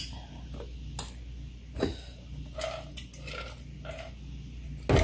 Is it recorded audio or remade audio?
recorded